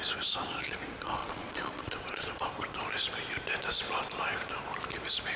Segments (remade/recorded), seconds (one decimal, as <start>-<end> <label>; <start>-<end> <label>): 0.0-1.2 recorded; 1.2-2.5 remade; 2.5-5.4 recorded